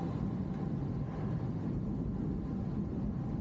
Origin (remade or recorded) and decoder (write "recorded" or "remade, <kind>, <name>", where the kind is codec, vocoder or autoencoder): recorded